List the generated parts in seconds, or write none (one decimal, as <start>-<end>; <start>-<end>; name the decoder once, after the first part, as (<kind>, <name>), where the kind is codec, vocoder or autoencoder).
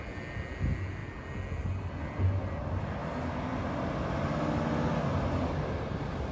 none